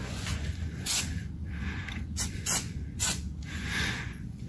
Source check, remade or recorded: remade